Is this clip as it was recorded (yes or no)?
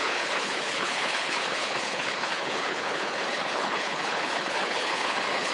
no